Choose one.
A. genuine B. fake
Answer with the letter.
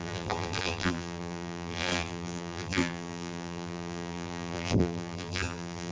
B